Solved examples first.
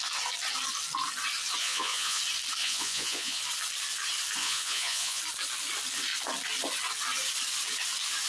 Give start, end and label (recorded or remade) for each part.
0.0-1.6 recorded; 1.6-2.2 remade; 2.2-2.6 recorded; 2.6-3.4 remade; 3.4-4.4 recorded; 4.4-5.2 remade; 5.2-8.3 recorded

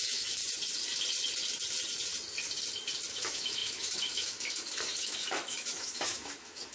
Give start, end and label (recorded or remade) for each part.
0.0-0.4 remade; 0.4-3.1 recorded; 3.1-6.7 remade

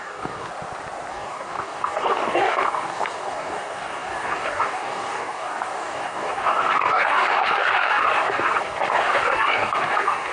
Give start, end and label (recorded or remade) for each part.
0.0-0.5 remade; 0.5-1.1 recorded; 1.1-10.3 remade

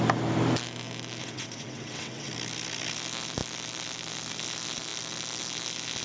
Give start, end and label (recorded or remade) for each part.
0.0-1.2 recorded; 1.2-2.3 remade; 2.3-6.0 recorded

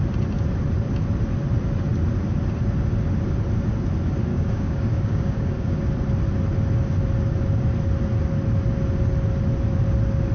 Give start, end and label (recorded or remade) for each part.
0.0-4.3 recorded; 4.3-5.8 remade; 5.8-10.3 recorded

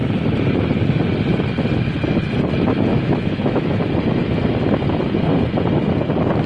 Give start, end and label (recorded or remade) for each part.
0.0-2.9 recorded; 2.9-3.7 remade; 3.7-6.5 recorded